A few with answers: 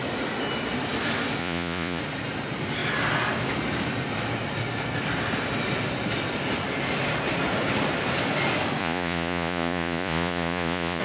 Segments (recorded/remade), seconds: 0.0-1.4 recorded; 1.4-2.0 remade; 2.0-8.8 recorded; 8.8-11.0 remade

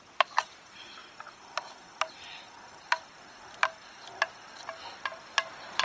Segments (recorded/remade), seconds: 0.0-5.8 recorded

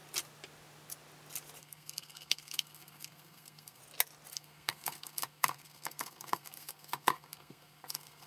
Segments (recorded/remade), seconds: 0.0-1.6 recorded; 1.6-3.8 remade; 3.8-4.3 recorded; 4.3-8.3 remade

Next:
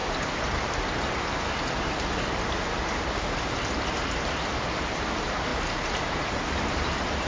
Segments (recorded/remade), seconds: 0.0-3.9 recorded; 3.9-5.5 remade; 5.5-6.0 recorded; 6.0-7.3 remade

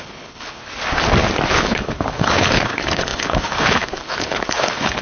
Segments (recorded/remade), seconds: 0.0-0.6 remade; 0.6-1.5 recorded; 1.5-5.0 remade